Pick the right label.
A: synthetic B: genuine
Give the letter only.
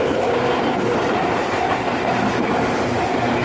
A